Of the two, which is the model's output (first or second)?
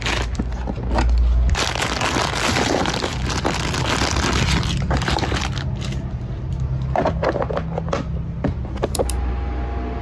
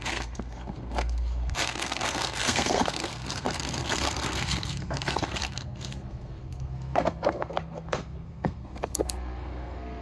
second